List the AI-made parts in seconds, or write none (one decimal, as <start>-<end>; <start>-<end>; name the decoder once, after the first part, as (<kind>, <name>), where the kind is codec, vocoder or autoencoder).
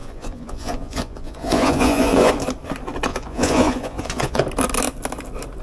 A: 0.0-2.3 (vocoder, Vocos); 3.1-4.4